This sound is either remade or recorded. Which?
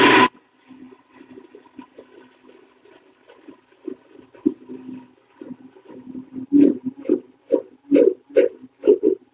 recorded